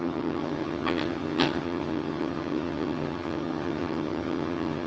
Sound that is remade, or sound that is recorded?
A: remade